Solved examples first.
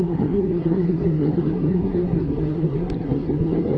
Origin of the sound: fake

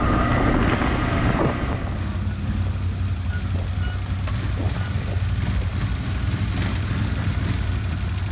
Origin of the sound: real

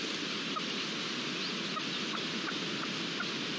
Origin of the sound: real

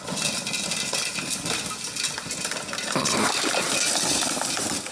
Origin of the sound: real